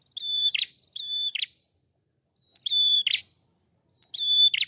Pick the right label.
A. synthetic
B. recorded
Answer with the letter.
B